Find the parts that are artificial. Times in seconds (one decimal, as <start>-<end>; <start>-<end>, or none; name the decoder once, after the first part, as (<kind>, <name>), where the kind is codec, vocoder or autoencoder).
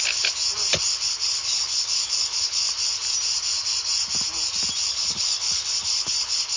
0.0-0.4 (codec, HILCodec); 1.1-2.6; 4.9-6.6